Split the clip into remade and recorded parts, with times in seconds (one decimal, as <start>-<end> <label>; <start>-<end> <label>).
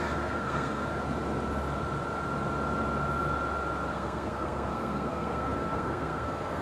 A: 0.0-0.9 remade; 0.9-3.9 recorded; 3.9-6.6 remade